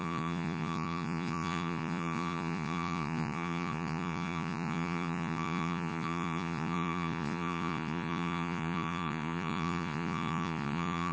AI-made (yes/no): yes